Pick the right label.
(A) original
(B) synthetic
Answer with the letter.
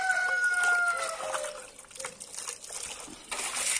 A